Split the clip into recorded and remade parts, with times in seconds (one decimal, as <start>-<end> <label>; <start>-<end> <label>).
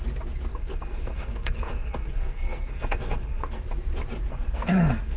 0.0-0.5 recorded; 0.5-3.6 remade; 3.6-4.3 recorded; 4.3-5.2 remade